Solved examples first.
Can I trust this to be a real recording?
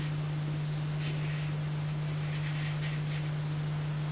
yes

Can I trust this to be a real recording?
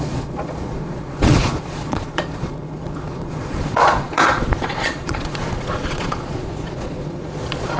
no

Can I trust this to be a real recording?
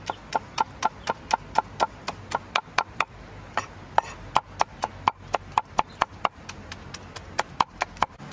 yes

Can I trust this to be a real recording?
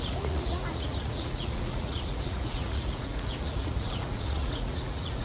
no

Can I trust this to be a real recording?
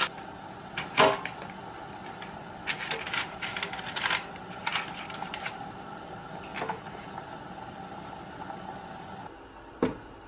yes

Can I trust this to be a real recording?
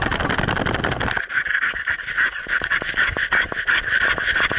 yes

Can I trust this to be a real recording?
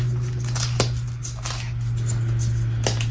yes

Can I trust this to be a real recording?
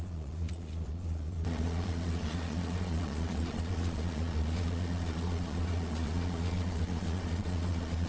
no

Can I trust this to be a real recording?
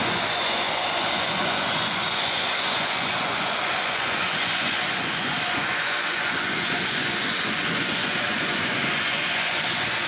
no